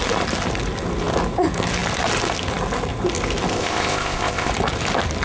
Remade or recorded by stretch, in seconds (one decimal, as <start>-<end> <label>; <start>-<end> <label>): 0.0-3.5 recorded; 3.5-4.5 remade; 4.5-5.2 recorded